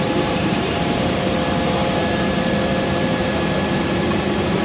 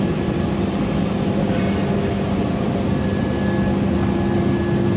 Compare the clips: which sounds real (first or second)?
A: second